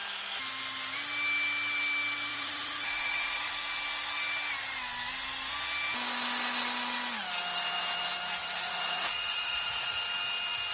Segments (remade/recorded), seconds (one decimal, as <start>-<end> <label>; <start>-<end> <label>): 0.0-2.3 recorded; 2.3-3.5 remade; 3.5-8.4 recorded; 8.4-10.0 remade; 10.0-10.7 recorded